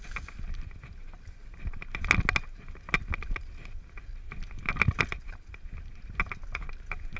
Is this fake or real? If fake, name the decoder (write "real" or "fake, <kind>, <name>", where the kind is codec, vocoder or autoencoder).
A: real